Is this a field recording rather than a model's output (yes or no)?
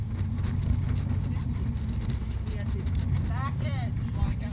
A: yes